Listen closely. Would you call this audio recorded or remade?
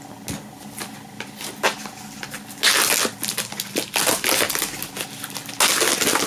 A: recorded